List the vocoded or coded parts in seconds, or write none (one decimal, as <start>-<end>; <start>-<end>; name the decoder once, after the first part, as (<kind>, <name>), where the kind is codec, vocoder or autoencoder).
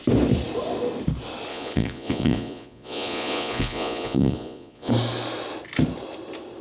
1.5-4.9 (vocoder, Vocos)